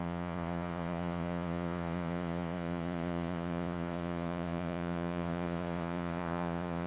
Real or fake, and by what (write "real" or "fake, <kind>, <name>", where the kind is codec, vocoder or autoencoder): fake, vocoder, Vocos